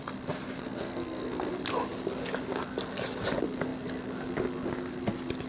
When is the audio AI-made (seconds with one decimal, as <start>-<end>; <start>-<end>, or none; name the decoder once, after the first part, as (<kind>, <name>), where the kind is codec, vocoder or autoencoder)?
0.6-1.5 (codec, SNAC)